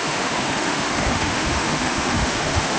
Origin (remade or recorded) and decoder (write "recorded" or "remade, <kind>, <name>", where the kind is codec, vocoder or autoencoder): remade, autoencoder, DAC-VAE